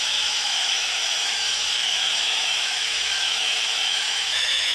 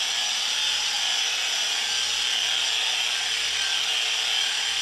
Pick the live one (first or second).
second